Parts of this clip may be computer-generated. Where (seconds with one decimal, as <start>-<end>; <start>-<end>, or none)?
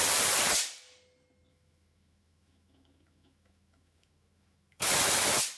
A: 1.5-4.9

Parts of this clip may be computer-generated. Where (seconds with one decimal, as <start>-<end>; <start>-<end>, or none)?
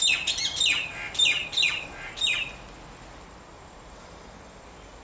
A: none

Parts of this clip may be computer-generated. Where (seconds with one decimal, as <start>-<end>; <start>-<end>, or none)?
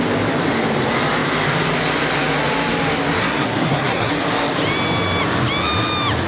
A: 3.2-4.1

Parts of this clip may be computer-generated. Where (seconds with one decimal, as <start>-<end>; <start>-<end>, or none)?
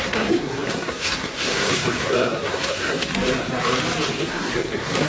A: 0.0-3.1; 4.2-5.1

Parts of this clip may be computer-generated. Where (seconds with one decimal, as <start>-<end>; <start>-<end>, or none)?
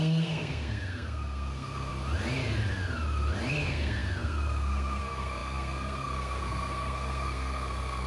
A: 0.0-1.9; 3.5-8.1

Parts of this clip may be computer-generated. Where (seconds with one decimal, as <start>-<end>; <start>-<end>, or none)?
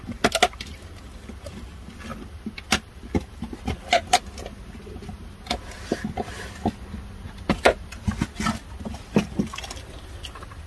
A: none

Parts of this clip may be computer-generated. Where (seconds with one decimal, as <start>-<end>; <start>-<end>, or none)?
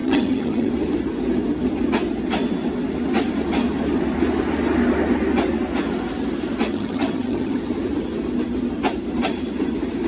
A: 0.0-0.7; 6.7-7.6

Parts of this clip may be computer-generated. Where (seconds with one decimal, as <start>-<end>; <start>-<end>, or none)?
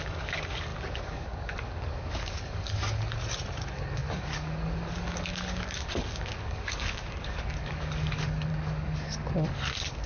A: 0.0-2.8; 3.6-10.1